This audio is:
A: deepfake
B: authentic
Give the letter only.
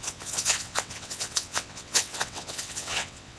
A